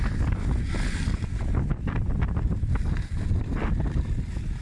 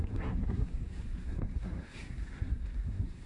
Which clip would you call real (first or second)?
first